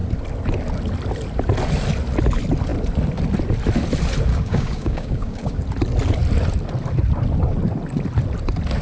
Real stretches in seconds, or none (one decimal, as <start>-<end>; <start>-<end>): 0.0-4.3; 5.6-8.8